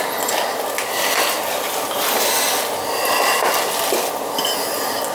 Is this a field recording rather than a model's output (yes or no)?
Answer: yes